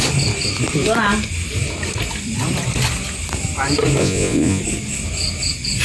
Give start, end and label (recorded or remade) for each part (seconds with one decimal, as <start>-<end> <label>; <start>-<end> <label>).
0.0-4.0 recorded; 4.0-4.6 remade; 4.6-5.8 recorded